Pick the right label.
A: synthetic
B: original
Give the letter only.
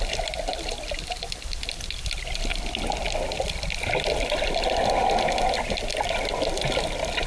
B